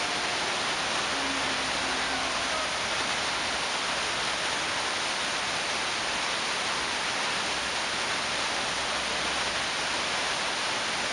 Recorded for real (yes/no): yes